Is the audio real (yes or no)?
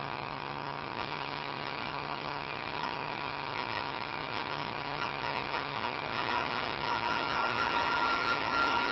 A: no